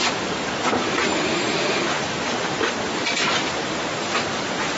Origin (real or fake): real